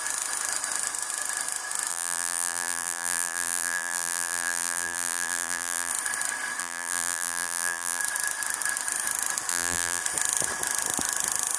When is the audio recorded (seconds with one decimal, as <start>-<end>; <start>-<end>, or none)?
0.0-1.9; 5.9-6.6; 8.0-9.5; 10.0-11.6